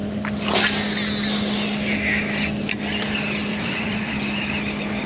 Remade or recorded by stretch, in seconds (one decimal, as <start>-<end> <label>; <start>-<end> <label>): 0.0-3.5 recorded; 3.5-4.1 remade; 4.1-5.1 recorded